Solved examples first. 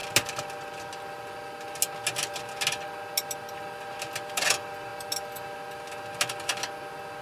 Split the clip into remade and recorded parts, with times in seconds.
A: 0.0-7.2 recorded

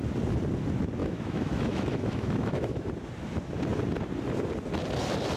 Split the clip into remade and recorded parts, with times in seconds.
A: 0.0-1.0 recorded; 1.0-2.9 remade; 2.9-5.4 recorded

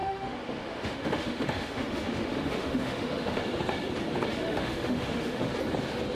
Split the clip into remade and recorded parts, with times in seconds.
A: 0.0-3.4 remade; 3.4-4.3 recorded; 4.3-5.5 remade; 5.5-6.1 recorded

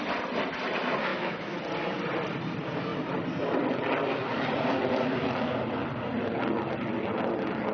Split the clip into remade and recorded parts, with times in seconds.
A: 0.0-1.1 recorded; 1.1-1.6 remade; 1.6-7.7 recorded

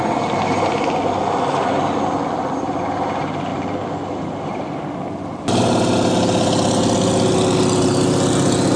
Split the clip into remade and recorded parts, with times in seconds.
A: 0.0-8.8 recorded

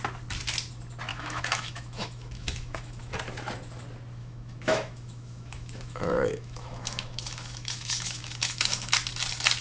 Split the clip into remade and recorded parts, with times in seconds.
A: 0.0-1.1 recorded; 1.1-3.1 remade; 3.1-4.2 recorded; 4.2-8.9 remade; 8.9-9.6 recorded

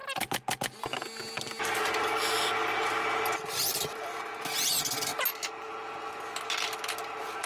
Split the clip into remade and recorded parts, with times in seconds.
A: 0.0-7.5 recorded